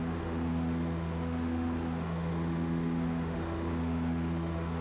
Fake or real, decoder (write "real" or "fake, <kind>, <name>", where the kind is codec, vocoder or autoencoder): fake, autoencoder, DAC-VAE